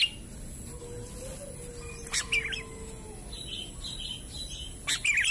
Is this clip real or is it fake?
real